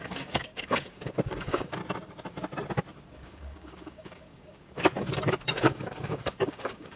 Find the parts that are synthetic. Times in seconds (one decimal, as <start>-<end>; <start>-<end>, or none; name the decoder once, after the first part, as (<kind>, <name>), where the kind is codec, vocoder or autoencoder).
0.0-1.8 (codec, DAC); 3.1-7.0